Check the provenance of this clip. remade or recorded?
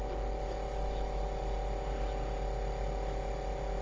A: recorded